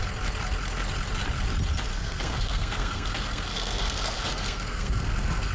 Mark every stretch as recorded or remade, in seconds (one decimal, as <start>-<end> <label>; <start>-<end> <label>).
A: 0.0-1.9 recorded; 1.9-5.5 remade